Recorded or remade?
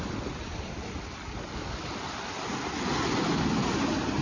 recorded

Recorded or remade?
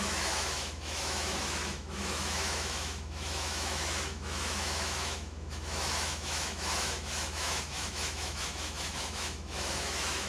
remade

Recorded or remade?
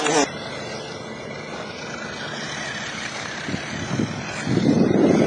recorded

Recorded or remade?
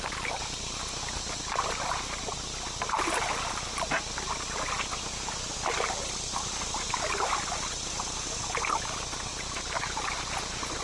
recorded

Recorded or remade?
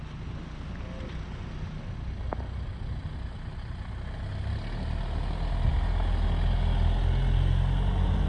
recorded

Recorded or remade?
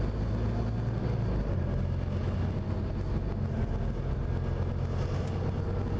recorded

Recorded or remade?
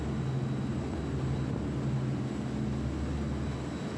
recorded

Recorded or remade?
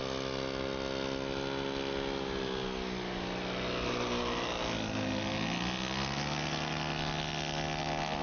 recorded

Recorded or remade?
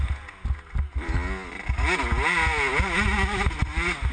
recorded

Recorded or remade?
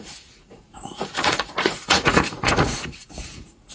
remade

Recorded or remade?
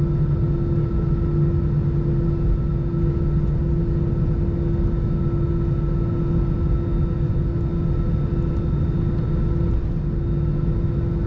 recorded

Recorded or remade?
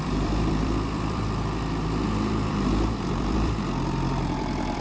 remade